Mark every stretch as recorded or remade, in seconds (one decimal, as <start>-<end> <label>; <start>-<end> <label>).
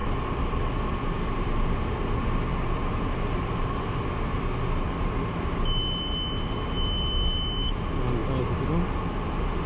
0.0-9.7 recorded